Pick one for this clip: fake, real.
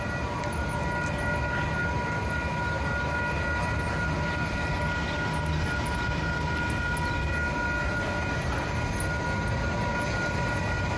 real